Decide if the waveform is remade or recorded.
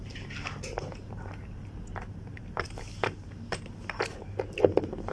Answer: remade